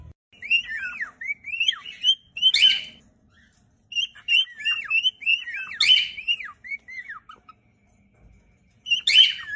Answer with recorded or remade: recorded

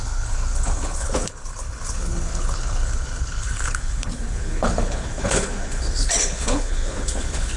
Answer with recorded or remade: remade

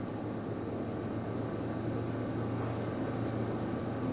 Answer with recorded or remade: recorded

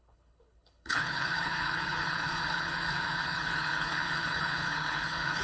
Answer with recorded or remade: remade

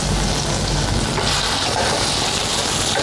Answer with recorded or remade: recorded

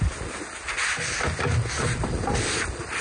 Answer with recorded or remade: recorded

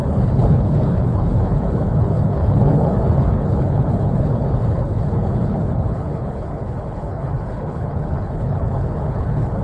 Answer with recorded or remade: remade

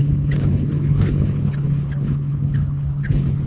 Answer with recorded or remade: remade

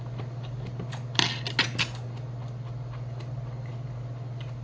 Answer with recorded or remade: recorded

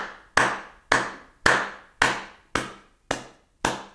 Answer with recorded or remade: recorded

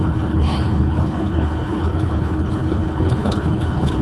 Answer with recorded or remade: remade